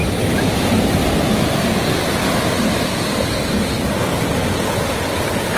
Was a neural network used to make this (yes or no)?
no